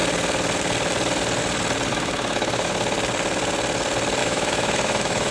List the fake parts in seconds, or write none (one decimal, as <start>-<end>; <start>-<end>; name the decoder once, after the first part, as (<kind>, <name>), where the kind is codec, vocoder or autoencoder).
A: 1.9-2.7 (autoencoder, DAC-VAE); 4.2-5.3